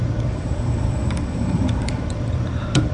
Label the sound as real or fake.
fake